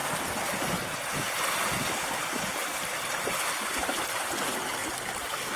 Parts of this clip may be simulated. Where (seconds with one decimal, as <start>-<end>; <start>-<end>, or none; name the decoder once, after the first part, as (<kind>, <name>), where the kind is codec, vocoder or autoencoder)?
4.8-5.6 (vocoder, BigVGAN v2)